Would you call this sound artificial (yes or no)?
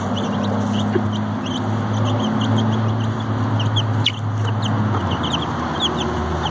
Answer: no